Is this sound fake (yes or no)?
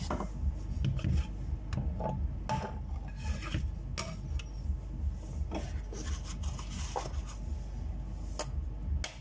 no